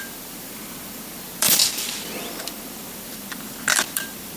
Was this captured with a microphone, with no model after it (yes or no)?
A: no